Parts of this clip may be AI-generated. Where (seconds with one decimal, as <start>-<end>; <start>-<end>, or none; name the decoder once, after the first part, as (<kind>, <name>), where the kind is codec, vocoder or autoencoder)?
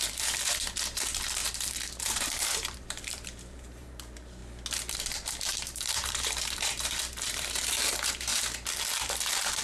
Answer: 0.0-4.4 (vocoder, BigVGAN v2); 4.9-8.3; 9.0-9.6